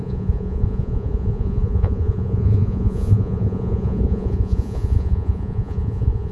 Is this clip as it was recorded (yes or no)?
no